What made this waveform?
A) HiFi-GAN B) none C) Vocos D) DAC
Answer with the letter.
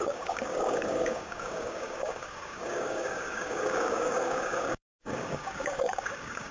D